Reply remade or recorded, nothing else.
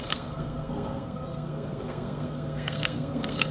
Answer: remade